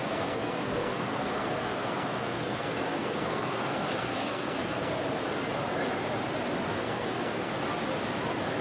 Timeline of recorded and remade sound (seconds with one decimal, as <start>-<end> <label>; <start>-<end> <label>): 0.0-4.9 remade; 4.9-6.7 recorded; 6.7-7.5 remade; 7.5-8.6 recorded